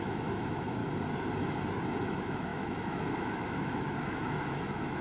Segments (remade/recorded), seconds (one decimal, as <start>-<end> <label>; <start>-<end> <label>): 0.0-0.8 remade; 0.8-2.1 recorded; 2.1-5.0 remade